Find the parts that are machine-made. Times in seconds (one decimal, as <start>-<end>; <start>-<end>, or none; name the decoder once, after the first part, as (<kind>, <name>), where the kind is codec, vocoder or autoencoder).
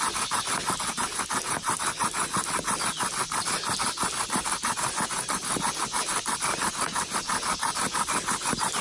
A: none